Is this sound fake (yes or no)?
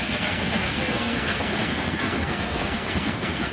yes